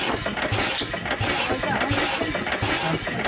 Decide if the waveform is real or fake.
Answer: real